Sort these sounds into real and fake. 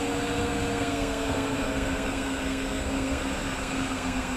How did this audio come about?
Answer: fake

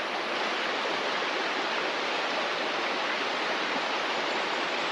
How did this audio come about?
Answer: real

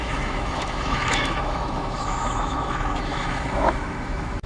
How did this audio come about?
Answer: fake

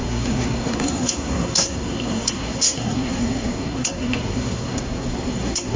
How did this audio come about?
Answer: fake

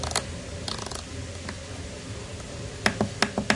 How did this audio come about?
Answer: real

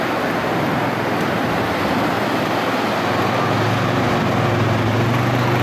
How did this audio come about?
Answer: real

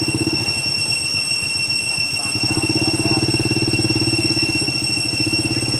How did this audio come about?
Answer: real